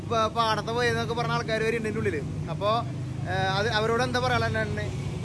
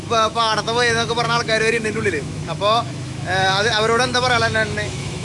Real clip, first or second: first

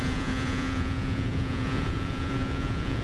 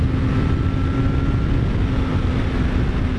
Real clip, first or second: second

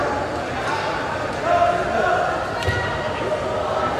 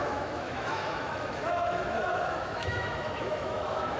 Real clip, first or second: first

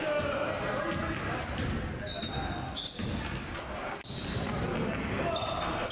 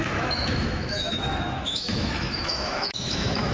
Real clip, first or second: first